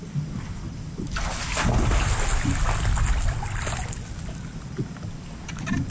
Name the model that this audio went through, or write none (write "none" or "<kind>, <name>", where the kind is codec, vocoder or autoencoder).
none